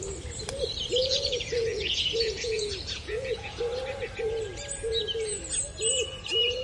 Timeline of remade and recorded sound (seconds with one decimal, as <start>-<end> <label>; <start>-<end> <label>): 0.0-1.0 recorded; 1.0-3.6 remade; 3.6-6.6 recorded